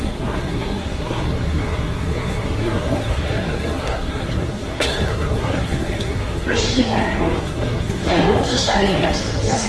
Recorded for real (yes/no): no